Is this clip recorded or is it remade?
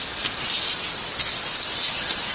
recorded